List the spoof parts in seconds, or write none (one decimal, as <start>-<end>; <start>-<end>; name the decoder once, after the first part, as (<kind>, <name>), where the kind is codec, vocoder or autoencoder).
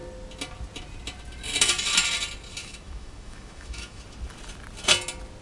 2.6-4.0 (autoencoder, DAC-VAE)